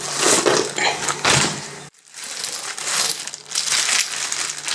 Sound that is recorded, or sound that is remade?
recorded